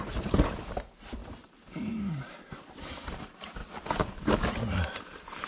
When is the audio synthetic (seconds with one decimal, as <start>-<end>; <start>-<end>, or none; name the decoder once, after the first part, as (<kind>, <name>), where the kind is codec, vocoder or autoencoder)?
0.0-3.6 (vocoder, BigVGAN v2); 5.0-5.5